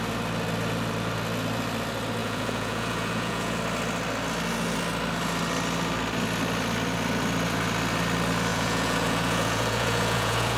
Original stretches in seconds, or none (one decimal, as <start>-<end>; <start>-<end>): 0.0-2.2; 3.6-8.5